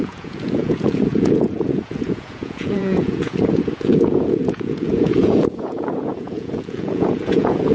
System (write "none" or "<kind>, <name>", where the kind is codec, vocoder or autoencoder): vocoder, Vocos